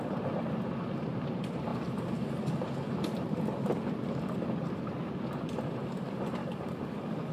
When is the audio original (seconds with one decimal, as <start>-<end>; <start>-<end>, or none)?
0.0-6.4